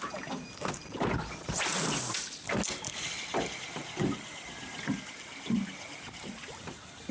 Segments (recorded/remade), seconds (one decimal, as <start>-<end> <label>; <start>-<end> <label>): 0.0-1.7 remade; 1.7-2.8 recorded; 2.8-7.1 remade